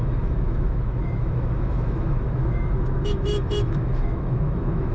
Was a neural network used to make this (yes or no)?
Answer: yes